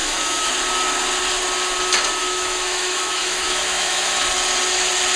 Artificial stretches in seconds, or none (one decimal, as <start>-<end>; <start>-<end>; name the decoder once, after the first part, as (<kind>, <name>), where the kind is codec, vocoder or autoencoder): 0.0-0.5 (autoencoder, DAC-VAE); 2.2-4.2